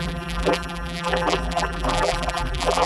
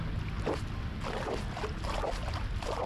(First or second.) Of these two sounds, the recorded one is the second